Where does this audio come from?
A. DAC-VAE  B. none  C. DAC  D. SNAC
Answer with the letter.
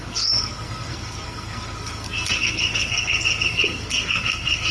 D